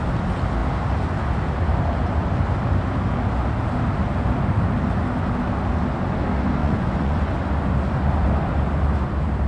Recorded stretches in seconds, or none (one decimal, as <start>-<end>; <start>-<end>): 0.0-6.6; 7.3-9.5